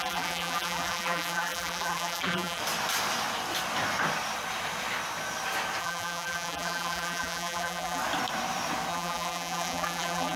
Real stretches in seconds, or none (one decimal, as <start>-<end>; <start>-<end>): 2.6-5.8; 8.0-8.9